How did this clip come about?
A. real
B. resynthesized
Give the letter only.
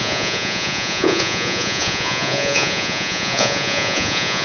B